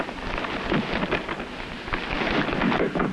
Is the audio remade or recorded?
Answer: recorded